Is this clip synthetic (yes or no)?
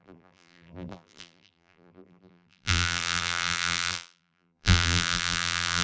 yes